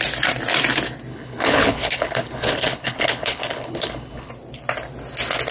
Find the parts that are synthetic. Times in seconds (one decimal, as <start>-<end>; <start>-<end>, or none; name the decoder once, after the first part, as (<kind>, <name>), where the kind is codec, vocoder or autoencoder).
1.1-4.3 (codec, HILCodec)